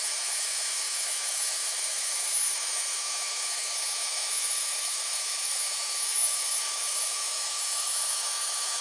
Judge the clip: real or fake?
fake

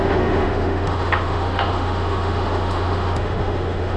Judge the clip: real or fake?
fake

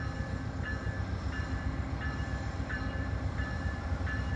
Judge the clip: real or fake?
fake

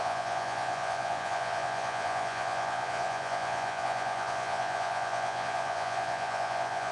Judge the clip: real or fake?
fake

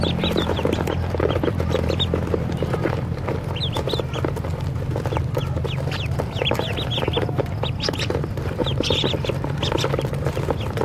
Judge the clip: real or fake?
fake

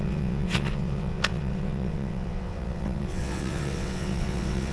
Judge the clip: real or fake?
fake